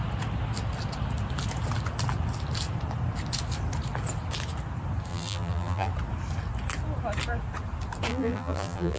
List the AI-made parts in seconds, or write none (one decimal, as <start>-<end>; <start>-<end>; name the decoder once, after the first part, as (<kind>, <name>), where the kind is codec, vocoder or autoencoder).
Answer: 5.1-5.9 (vocoder, BigVGAN v2); 8.1-9.0